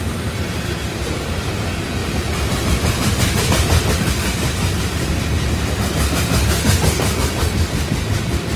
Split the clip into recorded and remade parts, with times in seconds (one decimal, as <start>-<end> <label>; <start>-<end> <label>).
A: 0.0-2.0 recorded; 2.0-3.4 remade; 3.4-8.6 recorded